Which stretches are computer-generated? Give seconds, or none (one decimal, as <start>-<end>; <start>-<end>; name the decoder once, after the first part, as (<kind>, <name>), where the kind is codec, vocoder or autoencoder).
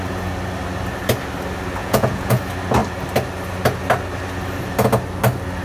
1.8-2.4 (vocoder, Vocos)